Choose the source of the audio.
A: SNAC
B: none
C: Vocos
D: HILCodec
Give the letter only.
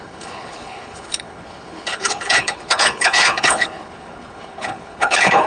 D